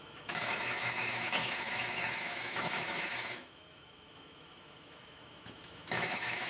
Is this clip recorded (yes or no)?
no